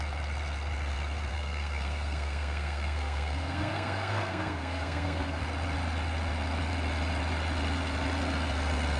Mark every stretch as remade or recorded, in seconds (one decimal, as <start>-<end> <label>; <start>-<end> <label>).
0.0-1.3 recorded; 1.3-5.4 remade; 5.4-9.0 recorded